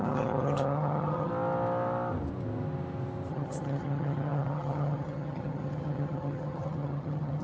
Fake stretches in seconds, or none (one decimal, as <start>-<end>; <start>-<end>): 0.0-1.3; 3.3-7.4